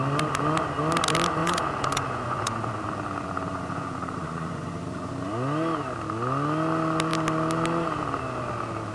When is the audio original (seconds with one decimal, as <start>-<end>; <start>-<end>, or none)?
0.0-1.4; 2.8-3.5; 5.1-8.9